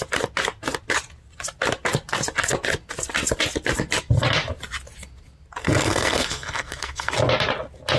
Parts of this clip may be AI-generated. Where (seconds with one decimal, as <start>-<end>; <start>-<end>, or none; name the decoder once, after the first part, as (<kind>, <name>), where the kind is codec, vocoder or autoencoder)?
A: 5.6-7.1 (codec, SNAC)